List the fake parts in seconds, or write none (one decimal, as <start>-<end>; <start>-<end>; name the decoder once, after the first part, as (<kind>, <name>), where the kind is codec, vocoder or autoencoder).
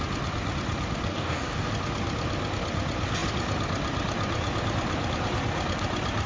1.1-1.7 (codec, DAC)